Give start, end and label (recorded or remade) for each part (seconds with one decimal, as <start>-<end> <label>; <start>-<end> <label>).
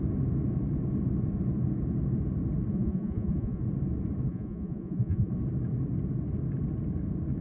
0.0-2.7 recorded; 2.7-3.6 remade; 3.6-4.3 recorded; 4.3-5.3 remade; 5.3-7.4 recorded